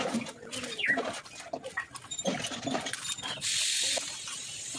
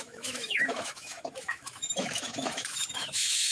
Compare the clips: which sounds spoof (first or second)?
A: second